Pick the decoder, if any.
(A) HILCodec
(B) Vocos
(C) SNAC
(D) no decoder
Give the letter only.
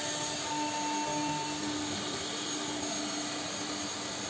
D